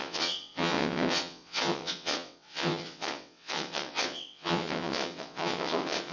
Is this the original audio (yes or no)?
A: no